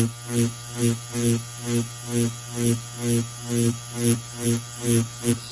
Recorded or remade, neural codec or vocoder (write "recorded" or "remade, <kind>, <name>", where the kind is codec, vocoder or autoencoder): recorded